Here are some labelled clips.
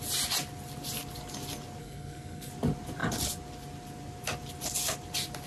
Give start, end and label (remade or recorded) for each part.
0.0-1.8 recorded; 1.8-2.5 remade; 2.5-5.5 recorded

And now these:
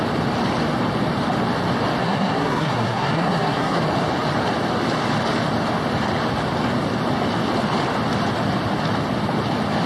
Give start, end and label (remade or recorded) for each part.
0.0-2.0 recorded; 2.0-3.8 remade; 3.8-9.9 recorded

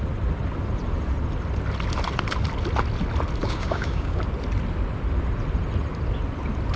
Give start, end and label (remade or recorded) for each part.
0.0-3.4 recorded; 3.4-4.2 remade; 4.2-6.8 recorded

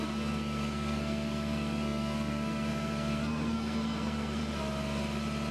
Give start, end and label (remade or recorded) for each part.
0.0-4.4 remade; 4.4-5.5 recorded